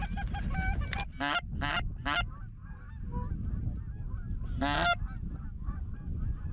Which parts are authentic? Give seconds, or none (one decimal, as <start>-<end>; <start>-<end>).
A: 0.0-5.5